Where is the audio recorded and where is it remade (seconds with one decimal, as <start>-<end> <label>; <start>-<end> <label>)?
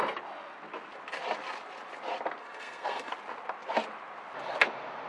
0.0-2.4 recorded; 2.4-3.1 remade; 3.1-5.1 recorded